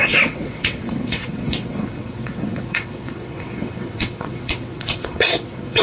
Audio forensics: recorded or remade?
remade